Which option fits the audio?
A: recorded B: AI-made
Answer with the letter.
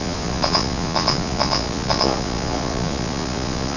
B